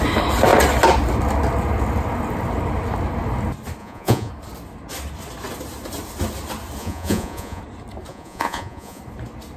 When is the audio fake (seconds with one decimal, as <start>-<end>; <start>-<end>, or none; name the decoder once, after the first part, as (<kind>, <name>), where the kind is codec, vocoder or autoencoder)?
3.8-4.3 (vocoder, Vocos); 6.8-7.6; 8.1-9.0